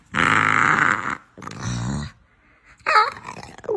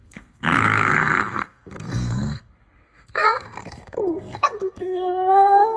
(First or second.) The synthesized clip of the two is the second